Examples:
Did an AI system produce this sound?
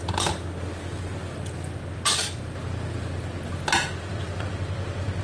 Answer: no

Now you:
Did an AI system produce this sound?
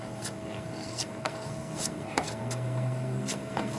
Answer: yes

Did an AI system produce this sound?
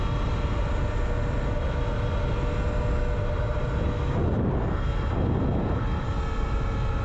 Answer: no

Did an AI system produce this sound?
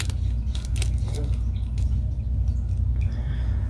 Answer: no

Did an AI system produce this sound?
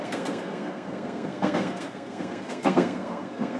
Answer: yes